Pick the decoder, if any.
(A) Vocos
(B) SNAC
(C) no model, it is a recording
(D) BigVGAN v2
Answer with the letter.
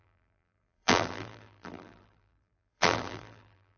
D